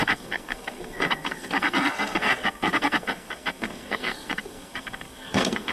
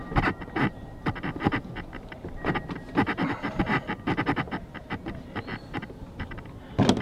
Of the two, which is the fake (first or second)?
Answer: first